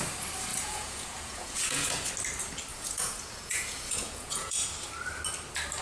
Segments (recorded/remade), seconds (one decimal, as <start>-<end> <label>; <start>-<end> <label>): 0.0-0.5 recorded; 0.5-2.1 remade; 2.1-2.7 recorded; 2.7-4.7 remade; 4.7-5.8 recorded